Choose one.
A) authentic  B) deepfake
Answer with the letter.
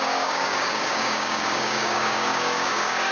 B